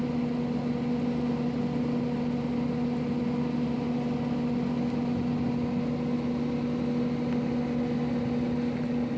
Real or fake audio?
real